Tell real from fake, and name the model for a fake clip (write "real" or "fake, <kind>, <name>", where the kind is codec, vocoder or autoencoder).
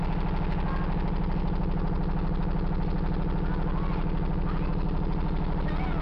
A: real